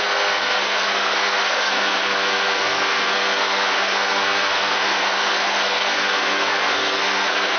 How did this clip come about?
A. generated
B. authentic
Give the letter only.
A